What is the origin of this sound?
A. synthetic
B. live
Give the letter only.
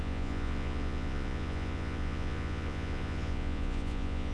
A